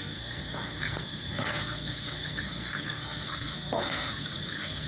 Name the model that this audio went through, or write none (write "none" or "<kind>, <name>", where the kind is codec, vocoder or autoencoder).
codec, SNAC